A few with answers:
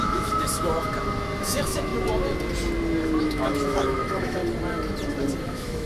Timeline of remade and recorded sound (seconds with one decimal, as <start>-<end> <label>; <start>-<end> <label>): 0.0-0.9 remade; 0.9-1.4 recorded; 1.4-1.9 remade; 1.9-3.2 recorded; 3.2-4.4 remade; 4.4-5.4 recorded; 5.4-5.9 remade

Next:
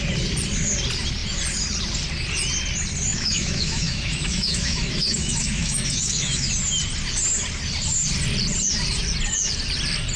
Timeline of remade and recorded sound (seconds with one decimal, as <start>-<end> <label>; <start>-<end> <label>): 0.0-3.1 recorded; 3.1-6.5 remade; 6.5-10.2 recorded

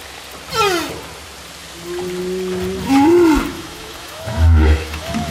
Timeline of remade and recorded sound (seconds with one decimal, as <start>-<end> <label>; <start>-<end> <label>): 0.0-3.5 recorded; 3.5-5.3 remade

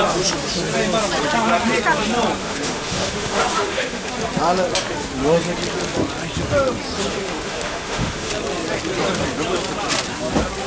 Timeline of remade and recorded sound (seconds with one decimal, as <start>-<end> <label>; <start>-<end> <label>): 0.0-2.4 recorded; 2.4-4.1 remade; 4.1-7.1 recorded; 7.1-8.3 remade; 8.3-10.7 recorded

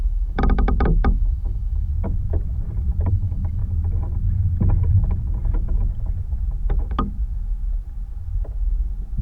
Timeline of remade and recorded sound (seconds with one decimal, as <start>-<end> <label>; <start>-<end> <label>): 0.0-1.9 remade; 1.9-3.1 recorded; 3.1-3.6 remade; 3.6-9.2 recorded